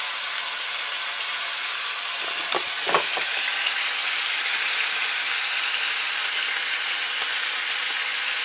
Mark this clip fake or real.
real